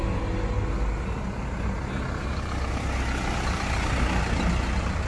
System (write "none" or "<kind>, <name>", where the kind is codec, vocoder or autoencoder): none